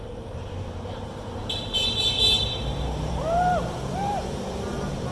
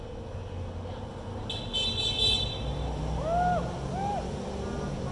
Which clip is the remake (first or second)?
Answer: first